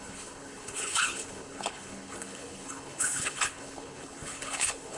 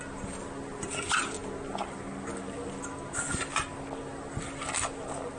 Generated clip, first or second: first